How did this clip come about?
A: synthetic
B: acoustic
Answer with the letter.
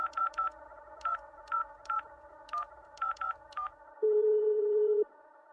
A